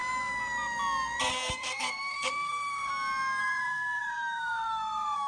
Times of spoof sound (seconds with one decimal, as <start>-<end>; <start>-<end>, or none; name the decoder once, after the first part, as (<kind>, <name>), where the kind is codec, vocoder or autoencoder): 1.3-2.9 (codec, SNAC); 3.4-5.3